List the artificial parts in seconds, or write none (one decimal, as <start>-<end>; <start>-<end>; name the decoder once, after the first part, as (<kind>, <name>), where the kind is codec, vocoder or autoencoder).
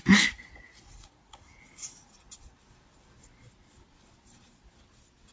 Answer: 0.0-2.1 (vocoder, Vocos)